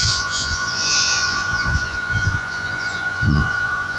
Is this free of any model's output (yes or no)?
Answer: no